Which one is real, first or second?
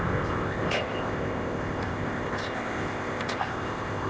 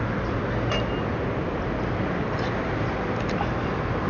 second